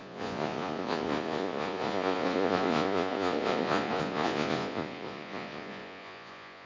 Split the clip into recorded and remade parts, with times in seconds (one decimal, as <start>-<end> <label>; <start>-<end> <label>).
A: 0.0-6.7 remade